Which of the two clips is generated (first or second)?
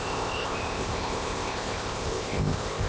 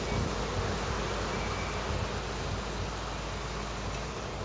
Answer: first